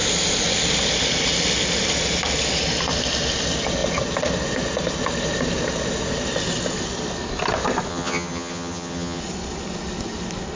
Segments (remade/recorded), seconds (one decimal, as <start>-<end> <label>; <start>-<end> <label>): 0.0-7.9 recorded; 7.9-9.2 remade; 9.2-10.6 recorded